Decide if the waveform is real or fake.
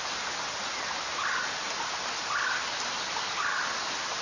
real